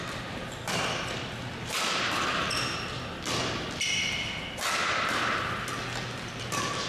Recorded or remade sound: recorded